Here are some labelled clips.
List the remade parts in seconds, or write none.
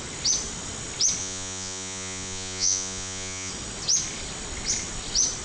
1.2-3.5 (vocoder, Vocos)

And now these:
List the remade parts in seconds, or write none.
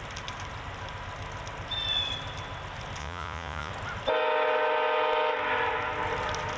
3.0-3.7 (vocoder, Vocos)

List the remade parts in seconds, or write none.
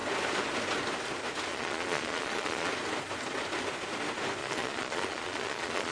1.5-2.7 (vocoder, Vocos); 4.4-5.9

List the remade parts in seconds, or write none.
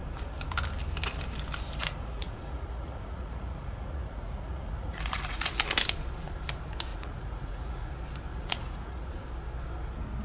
1.8-5.5 (vocoder, Vocos); 6.9-7.9; 8.3-9.1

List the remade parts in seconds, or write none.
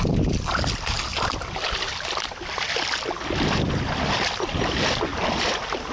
none